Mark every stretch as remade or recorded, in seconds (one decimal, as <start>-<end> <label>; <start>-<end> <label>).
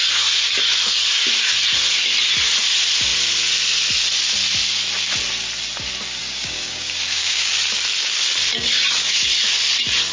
0.0-6.2 recorded; 6.2-7.5 remade; 7.5-10.1 recorded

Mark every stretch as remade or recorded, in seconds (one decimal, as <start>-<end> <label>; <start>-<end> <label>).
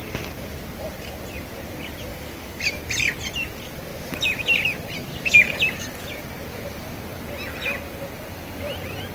0.0-2.1 recorded; 2.1-2.6 remade; 2.6-9.1 recorded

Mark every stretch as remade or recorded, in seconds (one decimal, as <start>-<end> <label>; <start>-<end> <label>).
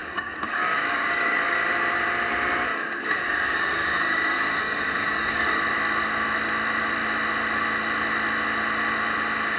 0.0-1.7 remade; 1.7-2.7 recorded; 2.7-5.6 remade; 5.6-9.6 recorded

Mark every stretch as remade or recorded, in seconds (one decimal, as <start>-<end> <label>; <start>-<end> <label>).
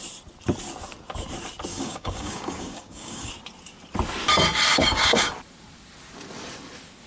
0.0-1.7 recorded; 1.7-3.3 remade; 3.3-4.7 recorded; 4.7-5.3 remade; 5.3-7.1 recorded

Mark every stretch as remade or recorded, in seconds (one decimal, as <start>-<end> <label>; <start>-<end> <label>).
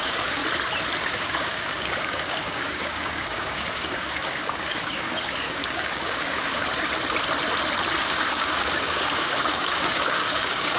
0.0-0.4 remade; 0.4-1.0 recorded; 1.0-6.6 remade; 6.6-8.0 recorded; 8.0-10.8 remade